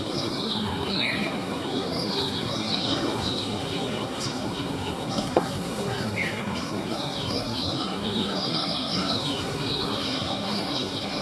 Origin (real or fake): fake